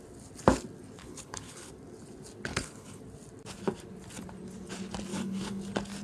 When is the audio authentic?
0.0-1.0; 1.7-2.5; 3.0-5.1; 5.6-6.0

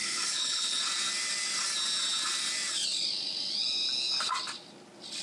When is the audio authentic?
0.8-5.2

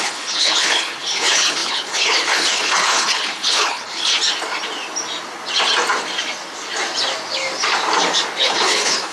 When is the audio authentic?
4.1-8.4

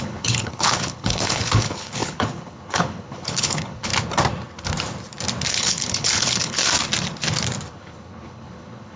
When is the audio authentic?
3.9-5.5; 6.6-7.7

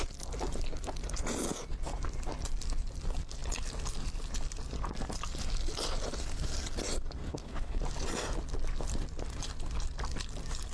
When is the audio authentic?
0.0-7.3; 7.8-10.7

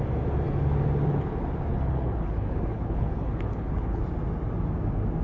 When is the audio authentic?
0.0-1.7; 4.0-5.2

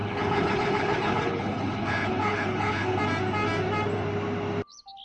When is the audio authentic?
3.0-5.0